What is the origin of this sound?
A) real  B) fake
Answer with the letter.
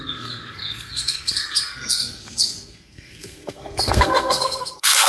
B